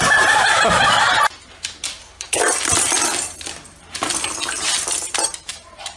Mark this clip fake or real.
real